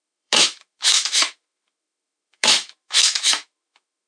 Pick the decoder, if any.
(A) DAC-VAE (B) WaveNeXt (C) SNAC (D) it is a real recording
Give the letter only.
A